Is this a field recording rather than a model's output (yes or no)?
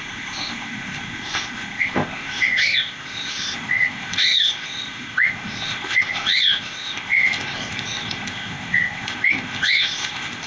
no